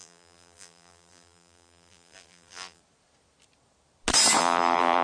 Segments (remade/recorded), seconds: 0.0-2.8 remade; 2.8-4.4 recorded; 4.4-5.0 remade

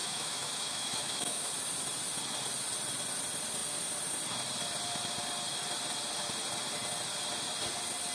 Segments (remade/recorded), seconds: 0.0-1.5 remade; 1.5-8.1 recorded